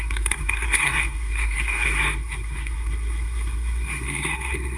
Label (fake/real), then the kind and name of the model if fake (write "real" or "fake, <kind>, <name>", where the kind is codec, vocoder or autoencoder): fake, codec, SNAC